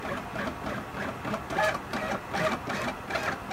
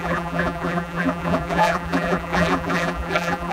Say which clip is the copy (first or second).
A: second